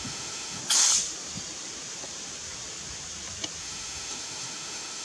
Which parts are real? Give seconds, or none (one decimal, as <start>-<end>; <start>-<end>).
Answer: 0.6-3.6

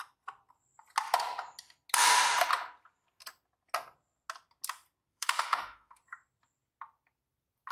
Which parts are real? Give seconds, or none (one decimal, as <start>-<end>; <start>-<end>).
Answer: 0.0-5.1; 6.0-7.7